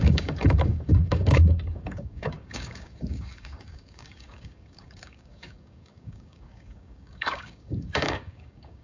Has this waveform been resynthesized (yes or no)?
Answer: yes